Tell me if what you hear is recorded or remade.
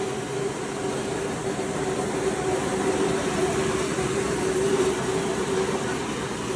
remade